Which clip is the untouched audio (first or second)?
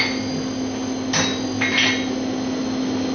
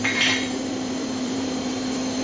first